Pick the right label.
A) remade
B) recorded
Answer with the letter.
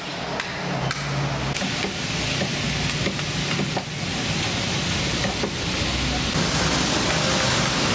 B